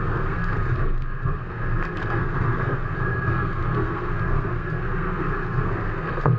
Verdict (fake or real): fake